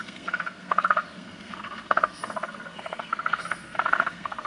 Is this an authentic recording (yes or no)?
no